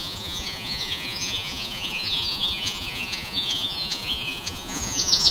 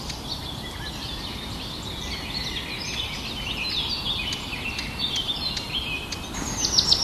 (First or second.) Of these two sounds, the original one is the second